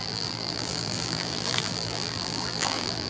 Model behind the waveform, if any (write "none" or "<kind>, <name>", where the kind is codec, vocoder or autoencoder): vocoder, BigVGAN v2